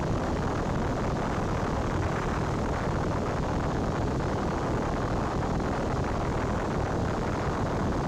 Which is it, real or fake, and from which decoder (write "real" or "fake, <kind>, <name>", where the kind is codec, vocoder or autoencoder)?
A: real